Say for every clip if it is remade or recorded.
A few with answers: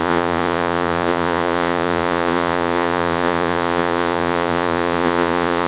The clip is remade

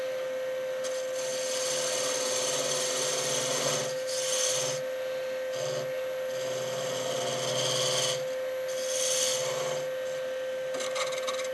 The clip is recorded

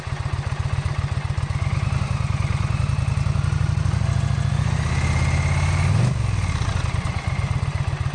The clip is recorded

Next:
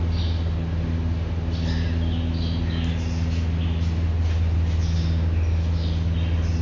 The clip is recorded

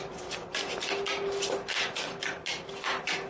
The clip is recorded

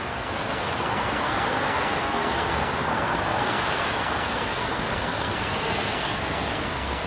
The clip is remade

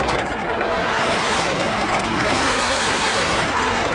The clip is remade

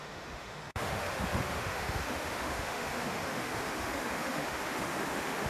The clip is remade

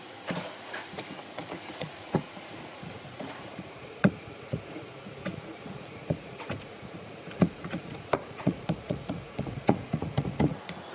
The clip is remade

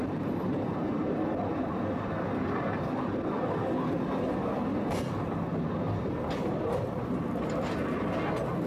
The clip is recorded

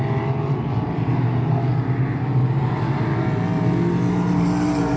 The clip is recorded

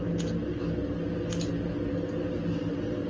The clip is recorded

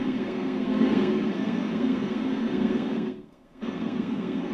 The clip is remade